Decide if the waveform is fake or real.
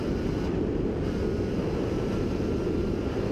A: real